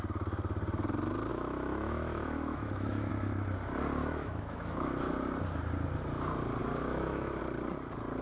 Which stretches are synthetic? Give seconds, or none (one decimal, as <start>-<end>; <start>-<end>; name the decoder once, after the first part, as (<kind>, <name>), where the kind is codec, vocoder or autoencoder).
1.3-3.1 (autoencoder, DAC-VAE); 4.0-5.1; 6.6-7.4